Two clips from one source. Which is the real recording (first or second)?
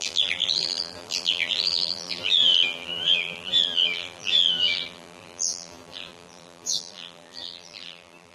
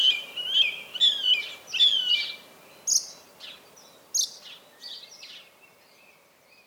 second